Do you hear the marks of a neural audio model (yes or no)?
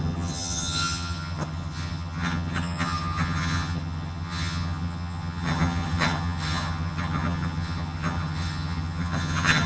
yes